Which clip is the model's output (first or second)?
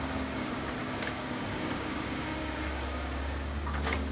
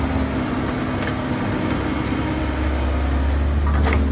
first